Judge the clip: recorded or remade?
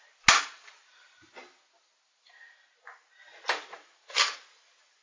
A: recorded